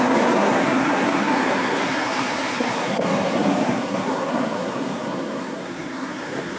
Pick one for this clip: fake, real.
fake